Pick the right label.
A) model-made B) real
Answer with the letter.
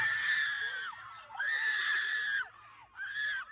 B